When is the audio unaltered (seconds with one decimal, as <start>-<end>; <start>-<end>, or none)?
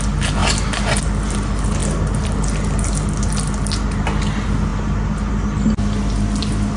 0.0-6.8